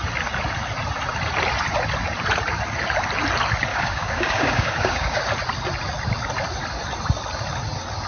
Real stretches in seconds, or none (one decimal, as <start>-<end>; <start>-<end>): 0.0-3.7; 5.2-8.1

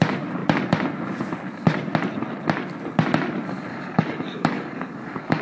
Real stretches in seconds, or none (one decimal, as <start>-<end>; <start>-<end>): 0.0-3.7